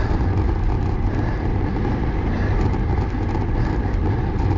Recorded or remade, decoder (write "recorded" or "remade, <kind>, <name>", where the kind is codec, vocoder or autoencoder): remade, vocoder, BigVGAN v2